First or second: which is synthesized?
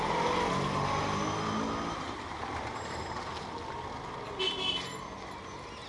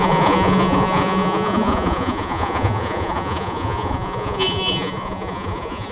second